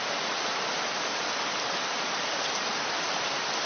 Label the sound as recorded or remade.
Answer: recorded